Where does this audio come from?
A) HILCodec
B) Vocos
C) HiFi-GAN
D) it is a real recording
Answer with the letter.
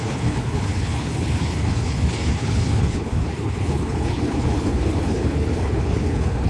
A